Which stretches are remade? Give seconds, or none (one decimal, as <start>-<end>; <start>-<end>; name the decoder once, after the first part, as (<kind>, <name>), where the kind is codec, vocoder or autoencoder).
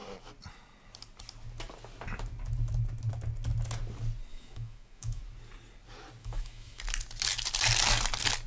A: 4.3-5.2 (autoencoder, DAC-VAE); 6.2-6.8